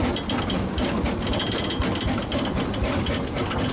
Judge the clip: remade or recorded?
recorded